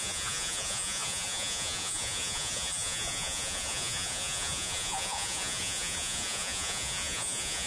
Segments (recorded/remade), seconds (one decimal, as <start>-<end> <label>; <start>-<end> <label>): 0.0-7.7 remade